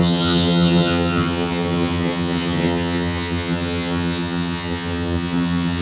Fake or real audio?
fake